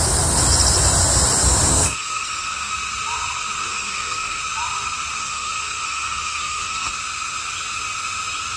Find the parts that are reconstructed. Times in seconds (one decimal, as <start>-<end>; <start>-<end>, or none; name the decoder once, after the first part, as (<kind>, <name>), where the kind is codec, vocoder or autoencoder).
1.7-2.7 (codec, SNAC); 3.7-4.4; 5.2-6.9